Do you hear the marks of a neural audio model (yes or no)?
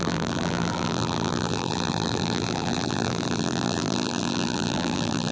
yes